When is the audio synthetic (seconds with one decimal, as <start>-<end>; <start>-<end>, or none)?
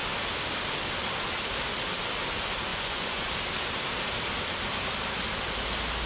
2.7-3.3